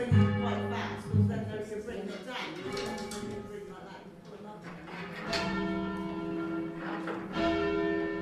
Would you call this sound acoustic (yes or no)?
yes